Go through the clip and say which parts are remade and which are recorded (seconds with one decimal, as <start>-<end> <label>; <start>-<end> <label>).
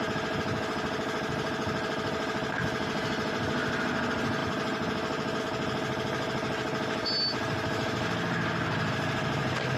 0.0-9.8 recorded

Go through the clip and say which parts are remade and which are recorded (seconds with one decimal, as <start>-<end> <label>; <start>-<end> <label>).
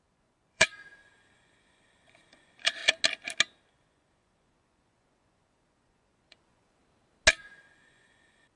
0.0-2.8 remade; 2.8-3.7 recorded; 3.7-6.8 remade; 6.8-7.4 recorded; 7.4-8.6 remade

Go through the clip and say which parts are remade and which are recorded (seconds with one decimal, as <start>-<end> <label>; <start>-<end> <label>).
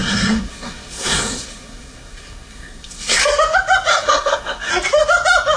0.0-3.2 remade; 3.2-3.9 recorded; 3.9-4.7 remade; 4.7-5.6 recorded